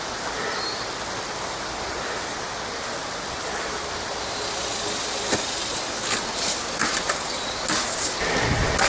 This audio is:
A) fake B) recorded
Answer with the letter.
B